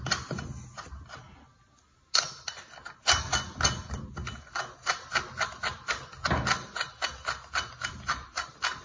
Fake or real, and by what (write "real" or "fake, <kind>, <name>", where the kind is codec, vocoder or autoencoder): real